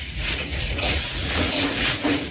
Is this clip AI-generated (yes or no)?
yes